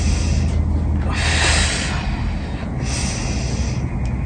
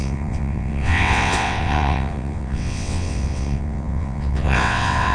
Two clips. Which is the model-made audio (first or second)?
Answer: second